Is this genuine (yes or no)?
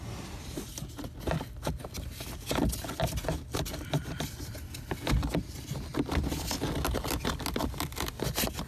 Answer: yes